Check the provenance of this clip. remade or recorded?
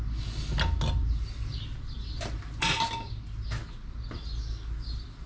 recorded